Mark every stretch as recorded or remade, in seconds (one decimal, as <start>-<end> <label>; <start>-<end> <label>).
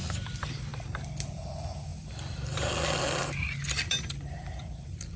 0.0-5.2 recorded